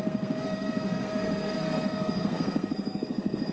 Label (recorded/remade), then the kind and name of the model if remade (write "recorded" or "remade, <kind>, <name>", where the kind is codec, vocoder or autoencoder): remade, codec, SNAC